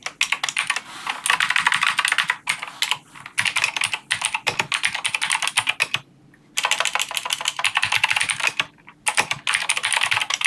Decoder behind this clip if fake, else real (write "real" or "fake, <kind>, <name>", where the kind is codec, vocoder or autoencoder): real